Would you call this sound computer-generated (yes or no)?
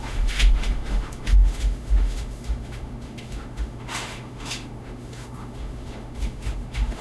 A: yes